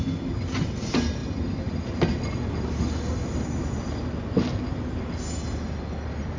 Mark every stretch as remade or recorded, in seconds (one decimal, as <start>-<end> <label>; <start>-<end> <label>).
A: 0.0-6.4 recorded